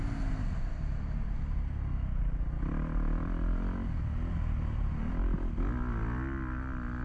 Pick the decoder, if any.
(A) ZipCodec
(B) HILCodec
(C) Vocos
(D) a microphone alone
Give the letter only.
D